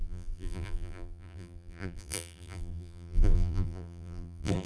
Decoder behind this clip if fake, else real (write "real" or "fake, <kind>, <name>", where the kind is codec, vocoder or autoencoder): fake, vocoder, BigVGAN v2